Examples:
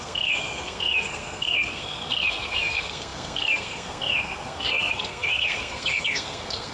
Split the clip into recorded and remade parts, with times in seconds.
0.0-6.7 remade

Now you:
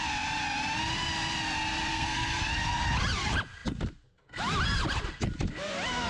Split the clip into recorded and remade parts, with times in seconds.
0.0-1.9 recorded; 1.9-2.4 remade; 2.4-6.1 recorded

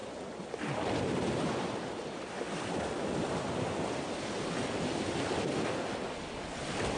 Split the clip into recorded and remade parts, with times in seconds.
0.0-7.0 recorded

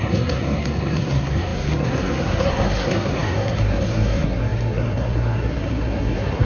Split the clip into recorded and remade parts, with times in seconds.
0.0-6.5 remade

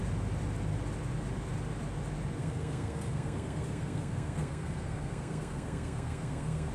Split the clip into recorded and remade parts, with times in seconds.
0.0-2.4 recorded; 2.4-6.7 remade

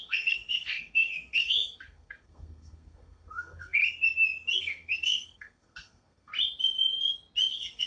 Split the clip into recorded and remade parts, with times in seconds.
0.0-3.8 remade; 3.8-4.6 recorded; 4.6-6.3 remade; 6.3-7.5 recorded; 7.5-7.9 remade

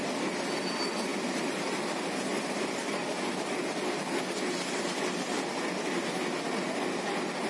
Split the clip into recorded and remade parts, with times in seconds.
0.0-7.5 recorded

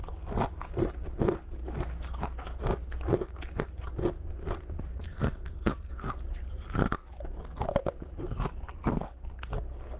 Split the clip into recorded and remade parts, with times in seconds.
0.0-4.9 recorded; 4.9-5.9 remade; 5.9-8.9 recorded; 8.9-9.5 remade; 9.5-10.0 recorded